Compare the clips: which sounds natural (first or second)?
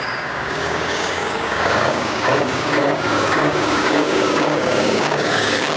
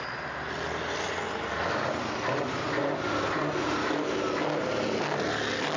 second